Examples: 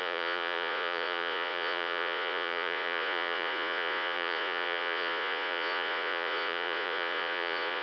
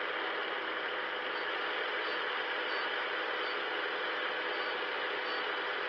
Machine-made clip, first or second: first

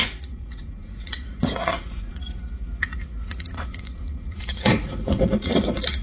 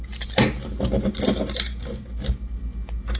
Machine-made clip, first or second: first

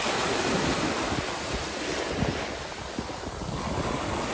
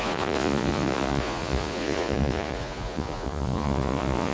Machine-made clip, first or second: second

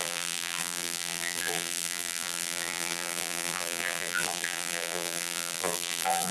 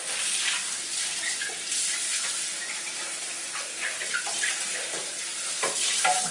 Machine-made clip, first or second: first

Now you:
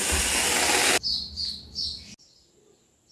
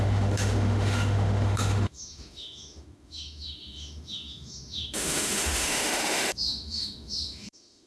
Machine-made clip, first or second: second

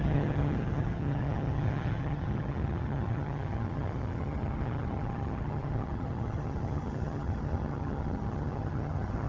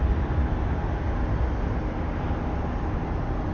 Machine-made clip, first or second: first